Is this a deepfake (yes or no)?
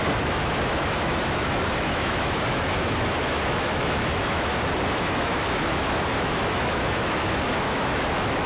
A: yes